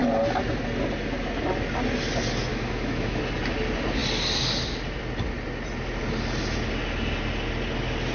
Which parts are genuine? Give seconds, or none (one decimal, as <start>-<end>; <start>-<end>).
0.0-2.5; 3.2-8.1